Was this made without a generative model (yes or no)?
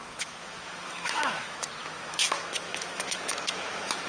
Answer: no